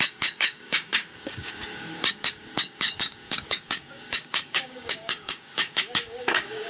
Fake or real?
fake